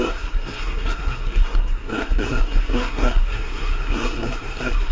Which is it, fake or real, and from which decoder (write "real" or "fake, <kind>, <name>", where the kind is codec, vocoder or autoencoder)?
fake, codec, SNAC